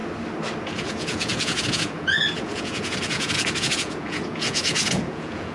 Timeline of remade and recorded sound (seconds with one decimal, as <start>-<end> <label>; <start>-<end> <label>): 0.0-0.6 recorded; 0.6-5.5 remade